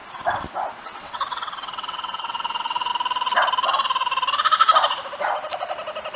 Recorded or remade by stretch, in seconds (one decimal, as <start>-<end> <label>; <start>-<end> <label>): 0.0-0.8 recorded; 0.8-2.9 remade; 2.9-6.2 recorded